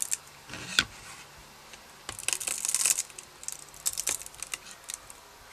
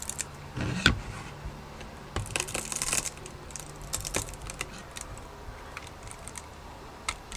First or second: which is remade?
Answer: second